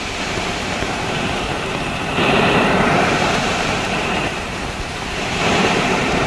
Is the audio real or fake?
fake